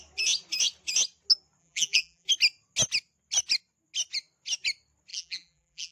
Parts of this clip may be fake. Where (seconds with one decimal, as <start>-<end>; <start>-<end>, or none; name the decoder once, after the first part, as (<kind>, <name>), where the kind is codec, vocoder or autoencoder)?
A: 1.6-2.3 (vocoder, BigVGAN v2); 5.1-5.9